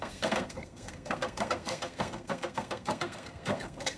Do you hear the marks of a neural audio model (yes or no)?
yes